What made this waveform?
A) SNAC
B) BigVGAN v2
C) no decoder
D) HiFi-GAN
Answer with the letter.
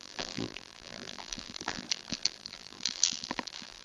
B